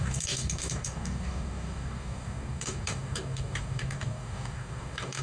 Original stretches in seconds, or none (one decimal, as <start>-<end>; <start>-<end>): none

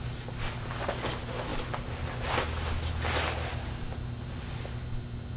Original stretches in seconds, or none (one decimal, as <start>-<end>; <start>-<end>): 0.0-5.4